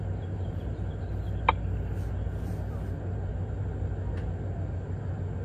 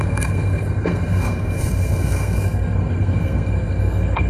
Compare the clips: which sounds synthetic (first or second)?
second